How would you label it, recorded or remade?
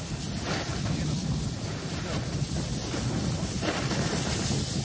recorded